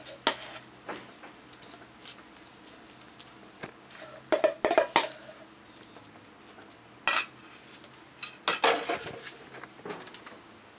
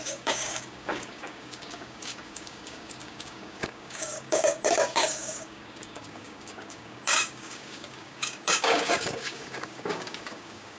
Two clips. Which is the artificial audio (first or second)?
second